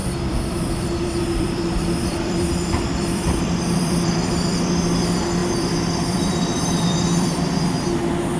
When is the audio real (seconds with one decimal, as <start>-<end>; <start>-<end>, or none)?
none